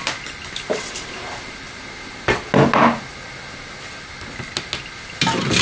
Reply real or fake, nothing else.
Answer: real